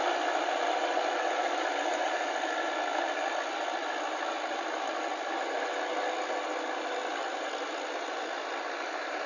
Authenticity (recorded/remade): recorded